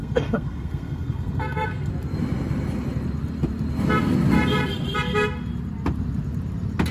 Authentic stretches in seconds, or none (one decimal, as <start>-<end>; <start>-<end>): 1.9-6.9